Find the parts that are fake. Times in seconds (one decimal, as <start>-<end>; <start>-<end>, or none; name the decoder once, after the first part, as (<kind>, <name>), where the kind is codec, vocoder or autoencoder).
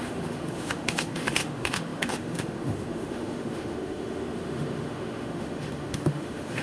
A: 0.0-6.6 (autoencoder, DAC-VAE)